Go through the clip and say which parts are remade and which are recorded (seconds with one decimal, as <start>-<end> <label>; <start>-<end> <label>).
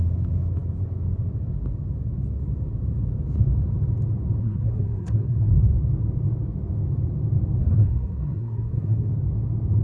0.0-4.4 recorded; 4.4-5.5 remade; 5.5-7.6 recorded; 7.6-9.1 remade; 9.1-9.8 recorded